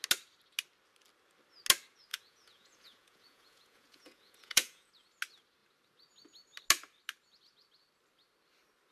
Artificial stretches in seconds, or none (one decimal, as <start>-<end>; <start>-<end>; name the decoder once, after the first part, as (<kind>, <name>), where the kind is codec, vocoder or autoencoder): 2.1-4.9 (vocoder, Vocos)